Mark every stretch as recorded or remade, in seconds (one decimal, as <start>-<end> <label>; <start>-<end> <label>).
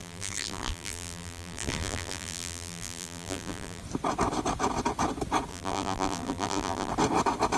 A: 0.0-3.8 remade; 3.8-5.5 recorded; 5.5-6.9 remade; 6.9-7.6 recorded